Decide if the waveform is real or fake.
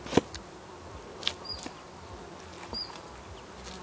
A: real